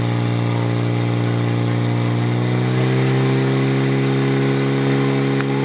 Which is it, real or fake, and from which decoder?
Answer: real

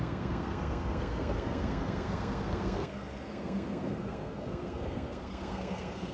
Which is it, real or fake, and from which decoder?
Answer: fake, codec, SNAC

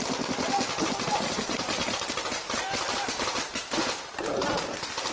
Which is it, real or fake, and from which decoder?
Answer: real